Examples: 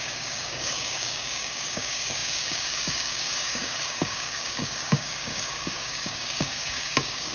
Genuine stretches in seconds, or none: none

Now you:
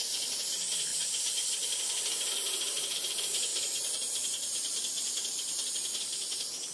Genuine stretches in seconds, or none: 0.0-0.9; 2.3-3.5; 5.7-6.7

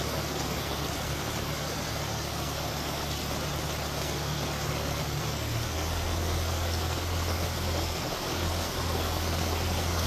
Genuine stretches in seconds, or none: 3.2-4.0

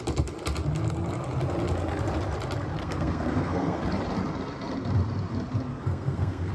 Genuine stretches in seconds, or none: 0.0-2.8; 3.8-5.7

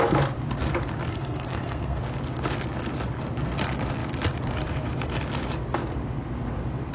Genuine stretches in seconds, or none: 0.0-1.1; 2.0-6.9